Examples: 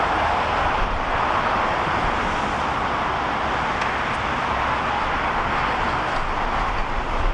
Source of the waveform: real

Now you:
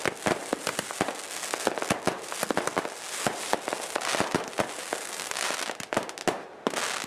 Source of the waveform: real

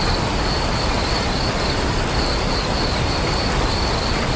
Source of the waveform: real